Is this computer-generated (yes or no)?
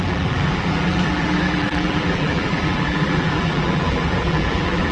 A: yes